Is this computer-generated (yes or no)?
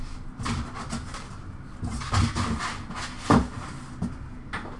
no